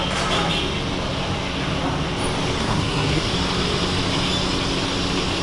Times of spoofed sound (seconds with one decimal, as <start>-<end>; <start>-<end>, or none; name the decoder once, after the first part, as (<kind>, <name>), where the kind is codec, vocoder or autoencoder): 2.6-3.3 (codec, SNAC)